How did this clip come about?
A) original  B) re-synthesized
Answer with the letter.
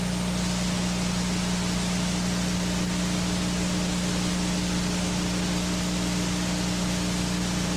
B